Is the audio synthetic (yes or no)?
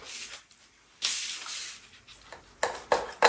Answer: no